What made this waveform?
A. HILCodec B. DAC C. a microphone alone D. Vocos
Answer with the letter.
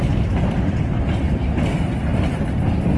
C